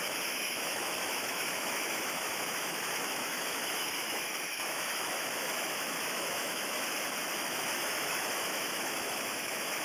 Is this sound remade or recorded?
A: remade